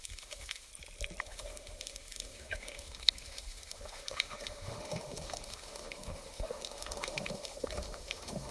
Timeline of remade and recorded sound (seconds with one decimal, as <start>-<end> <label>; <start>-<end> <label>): 0.0-0.7 remade; 0.7-1.2 recorded; 1.2-8.5 remade